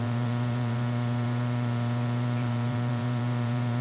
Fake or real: fake